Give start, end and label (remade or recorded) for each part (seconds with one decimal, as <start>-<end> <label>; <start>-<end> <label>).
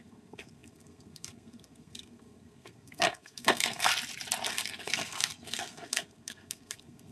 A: 0.0-3.9 remade; 3.9-4.5 recorded; 4.5-7.1 remade